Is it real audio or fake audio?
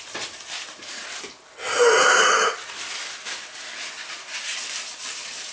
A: real